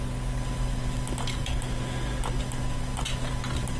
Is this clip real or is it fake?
real